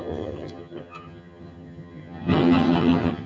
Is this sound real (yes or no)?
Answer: no